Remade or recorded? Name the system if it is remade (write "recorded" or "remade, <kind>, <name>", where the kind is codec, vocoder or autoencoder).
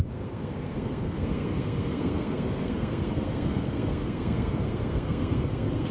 remade, codec, SNAC